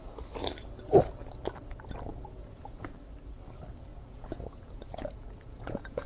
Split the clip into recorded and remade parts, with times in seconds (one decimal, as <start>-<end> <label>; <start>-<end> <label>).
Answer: 0.0-2.1 recorded; 2.1-2.9 remade; 2.9-3.9 recorded; 3.9-6.1 remade